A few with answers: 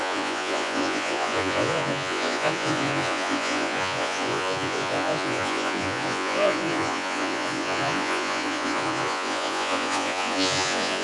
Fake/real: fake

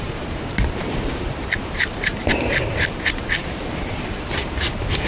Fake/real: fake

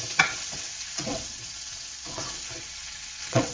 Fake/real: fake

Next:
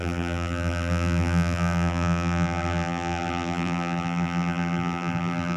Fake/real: fake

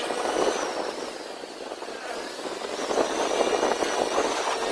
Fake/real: real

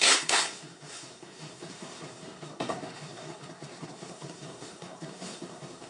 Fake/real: fake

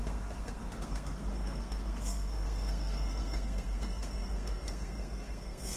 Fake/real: fake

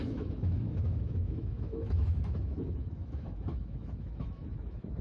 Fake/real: fake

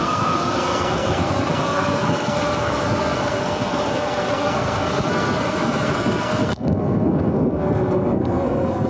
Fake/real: fake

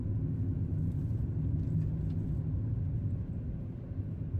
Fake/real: real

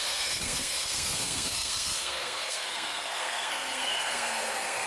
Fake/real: fake